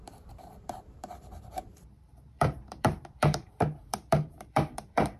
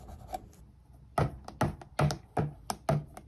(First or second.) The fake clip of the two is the first